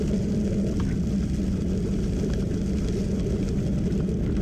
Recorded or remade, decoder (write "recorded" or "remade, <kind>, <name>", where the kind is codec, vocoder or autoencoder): recorded